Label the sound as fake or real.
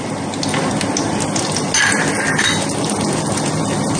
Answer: real